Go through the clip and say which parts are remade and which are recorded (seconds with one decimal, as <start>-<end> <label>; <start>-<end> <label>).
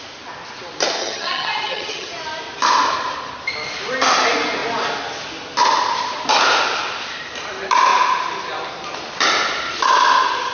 0.0-1.0 recorded; 1.0-2.1 remade; 2.1-10.5 recorded